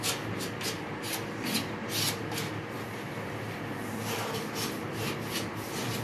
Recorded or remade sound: recorded